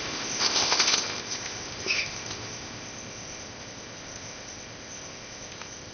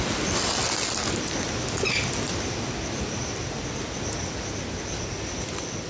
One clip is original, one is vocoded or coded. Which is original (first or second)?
second